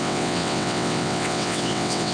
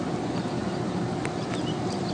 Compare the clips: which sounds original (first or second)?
second